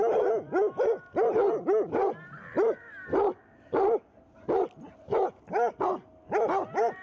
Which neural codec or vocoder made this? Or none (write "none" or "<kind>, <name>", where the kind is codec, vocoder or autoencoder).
none